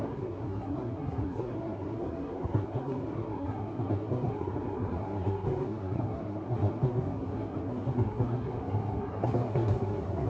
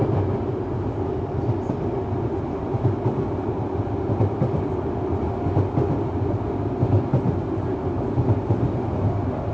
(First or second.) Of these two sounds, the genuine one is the second